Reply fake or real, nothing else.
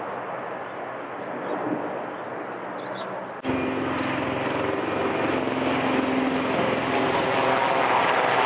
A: real